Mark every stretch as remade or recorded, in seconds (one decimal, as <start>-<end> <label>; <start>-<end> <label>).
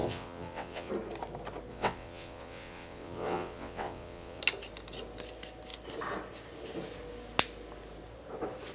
0.0-0.9 remade; 0.9-1.7 recorded; 1.7-4.4 remade; 4.4-8.7 recorded